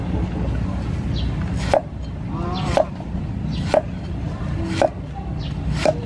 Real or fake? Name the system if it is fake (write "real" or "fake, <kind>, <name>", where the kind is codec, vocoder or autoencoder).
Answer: real